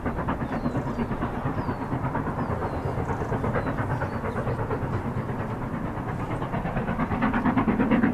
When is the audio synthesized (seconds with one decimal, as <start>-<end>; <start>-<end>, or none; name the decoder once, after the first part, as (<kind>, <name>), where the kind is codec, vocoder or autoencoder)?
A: none